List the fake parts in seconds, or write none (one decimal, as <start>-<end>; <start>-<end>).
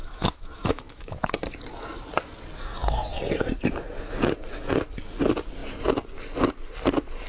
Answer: 0.0-1.3